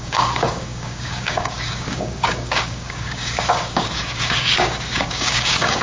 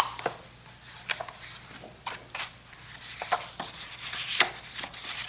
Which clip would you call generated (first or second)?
first